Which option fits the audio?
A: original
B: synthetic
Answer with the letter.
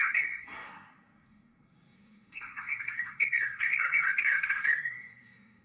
B